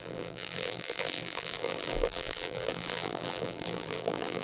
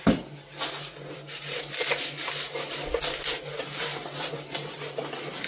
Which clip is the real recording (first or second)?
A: second